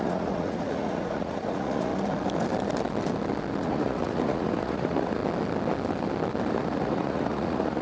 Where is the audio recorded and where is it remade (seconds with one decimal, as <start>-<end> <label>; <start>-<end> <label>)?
0.0-1.9 remade; 1.9-3.6 recorded; 3.6-5.2 remade; 5.2-6.5 recorded; 6.5-7.8 remade